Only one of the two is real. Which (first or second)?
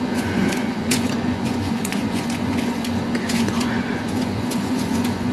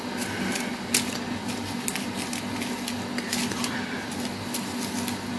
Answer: second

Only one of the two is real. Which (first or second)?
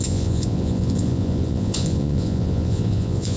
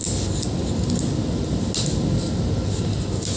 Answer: second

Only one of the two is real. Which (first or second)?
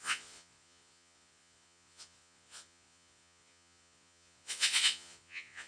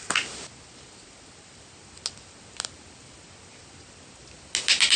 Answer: second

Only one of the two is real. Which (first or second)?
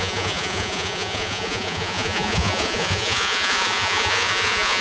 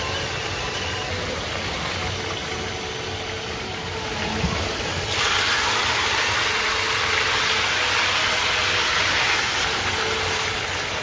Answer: second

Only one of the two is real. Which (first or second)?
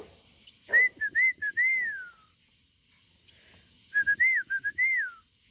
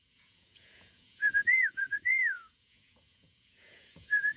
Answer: first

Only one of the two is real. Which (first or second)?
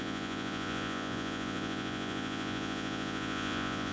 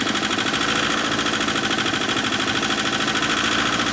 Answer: second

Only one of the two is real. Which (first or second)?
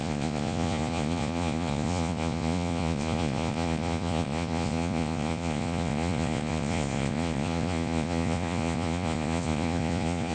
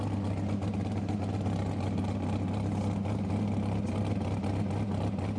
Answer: second